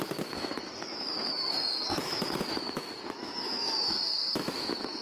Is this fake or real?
fake